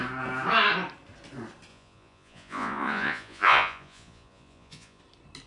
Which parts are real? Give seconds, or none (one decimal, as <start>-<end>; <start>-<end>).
0.0-1.7; 5.0-5.5